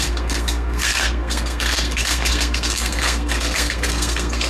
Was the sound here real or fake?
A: fake